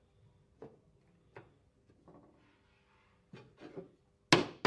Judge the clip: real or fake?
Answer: real